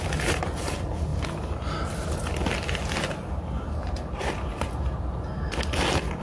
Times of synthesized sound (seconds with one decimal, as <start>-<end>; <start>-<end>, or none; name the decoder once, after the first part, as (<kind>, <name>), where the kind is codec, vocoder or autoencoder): none